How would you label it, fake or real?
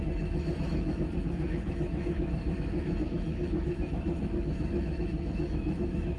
fake